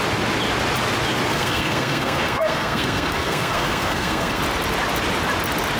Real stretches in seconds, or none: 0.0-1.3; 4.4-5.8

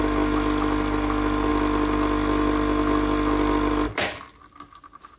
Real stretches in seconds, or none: 0.0-5.2

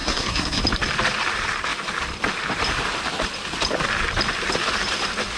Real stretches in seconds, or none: 0.6-5.4

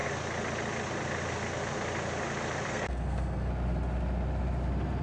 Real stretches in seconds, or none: 0.0-2.7; 3.5-5.0